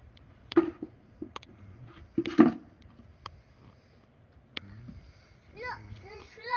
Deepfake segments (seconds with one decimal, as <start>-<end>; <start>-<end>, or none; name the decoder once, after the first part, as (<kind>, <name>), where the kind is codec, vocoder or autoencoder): 0.0-1.9 (vocoder, Vocos); 5.9-6.6